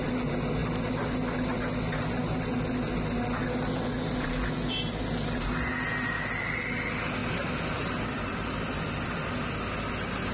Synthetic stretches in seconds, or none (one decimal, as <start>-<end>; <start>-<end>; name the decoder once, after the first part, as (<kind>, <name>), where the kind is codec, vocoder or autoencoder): 7.2-9.3 (vocoder, BigVGAN v2)